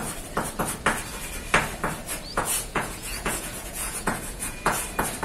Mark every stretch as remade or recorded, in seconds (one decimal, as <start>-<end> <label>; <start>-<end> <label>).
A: 0.0-2.3 recorded; 2.3-4.8 remade; 4.8-5.2 recorded